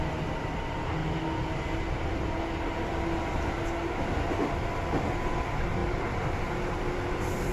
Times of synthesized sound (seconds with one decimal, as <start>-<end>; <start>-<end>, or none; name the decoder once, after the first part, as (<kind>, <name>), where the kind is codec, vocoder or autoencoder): none